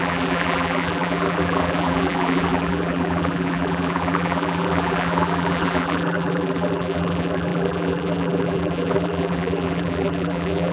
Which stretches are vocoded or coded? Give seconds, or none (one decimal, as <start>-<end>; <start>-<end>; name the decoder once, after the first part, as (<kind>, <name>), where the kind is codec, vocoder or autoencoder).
0.0-10.7 (vocoder, BigVGAN v2)